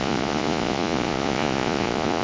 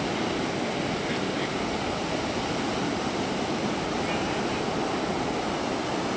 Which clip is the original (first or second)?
second